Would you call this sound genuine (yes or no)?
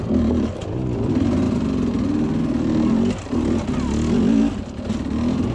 yes